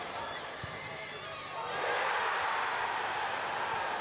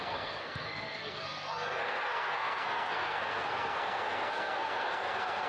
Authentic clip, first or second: first